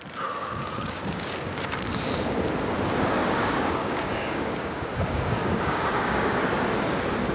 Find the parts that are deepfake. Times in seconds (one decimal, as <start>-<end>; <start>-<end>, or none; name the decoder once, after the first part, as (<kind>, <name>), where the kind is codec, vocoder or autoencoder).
0.4-1.9 (codec, DAC); 3.2-6.4

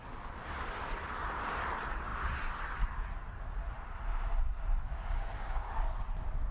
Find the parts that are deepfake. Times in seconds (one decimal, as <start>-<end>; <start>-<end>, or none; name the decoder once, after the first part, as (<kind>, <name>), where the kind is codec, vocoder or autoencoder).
4.8-5.9 (codec, DAC)

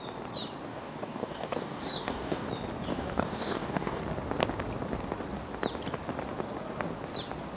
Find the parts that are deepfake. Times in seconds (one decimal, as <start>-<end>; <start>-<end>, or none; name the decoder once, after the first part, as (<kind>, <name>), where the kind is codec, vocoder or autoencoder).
0.7-2.5 (codec, DAC); 2.9-4.0

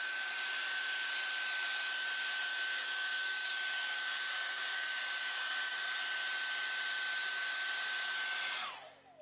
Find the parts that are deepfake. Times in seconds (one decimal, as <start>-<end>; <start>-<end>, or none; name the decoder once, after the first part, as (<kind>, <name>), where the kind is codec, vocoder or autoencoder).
2.5-5.8 (codec, DAC)

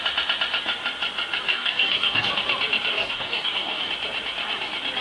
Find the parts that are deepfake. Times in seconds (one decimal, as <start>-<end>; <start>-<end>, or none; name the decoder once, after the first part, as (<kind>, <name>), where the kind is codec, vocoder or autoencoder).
1.5-2.3 (codec, DAC); 2.9-3.9

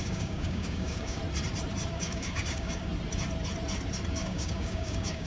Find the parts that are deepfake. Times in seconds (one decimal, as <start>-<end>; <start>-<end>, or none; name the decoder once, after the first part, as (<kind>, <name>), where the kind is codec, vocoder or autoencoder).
0.0-1.2 (codec, DAC); 1.9-2.9; 4.1-5.3

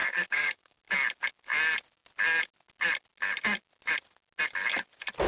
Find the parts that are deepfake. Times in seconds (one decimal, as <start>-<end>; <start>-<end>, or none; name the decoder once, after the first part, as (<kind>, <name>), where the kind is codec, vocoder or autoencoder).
0.0-0.8 (codec, DAC)

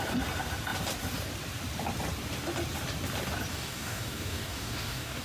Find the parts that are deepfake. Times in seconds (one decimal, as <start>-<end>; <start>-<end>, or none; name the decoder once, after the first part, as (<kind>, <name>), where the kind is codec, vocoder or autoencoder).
3.5-5.2 (codec, DAC)